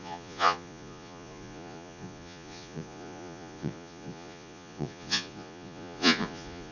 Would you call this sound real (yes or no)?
no